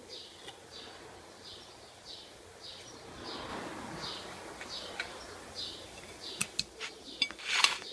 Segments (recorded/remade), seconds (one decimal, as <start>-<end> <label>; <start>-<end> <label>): 0.0-7.9 recorded